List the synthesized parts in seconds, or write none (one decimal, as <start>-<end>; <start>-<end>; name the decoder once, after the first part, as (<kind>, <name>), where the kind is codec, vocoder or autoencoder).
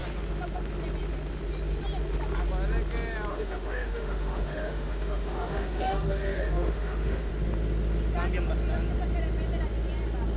3.3-7.3 (autoencoder, DAC-VAE)